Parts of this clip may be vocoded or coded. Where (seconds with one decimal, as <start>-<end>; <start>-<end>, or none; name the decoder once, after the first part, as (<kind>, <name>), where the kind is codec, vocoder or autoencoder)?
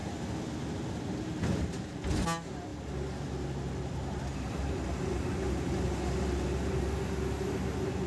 none